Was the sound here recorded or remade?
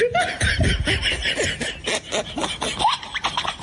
recorded